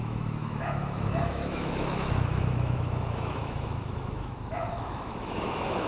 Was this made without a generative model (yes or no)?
no